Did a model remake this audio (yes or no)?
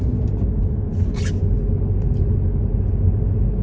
no